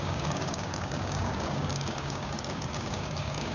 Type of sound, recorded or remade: remade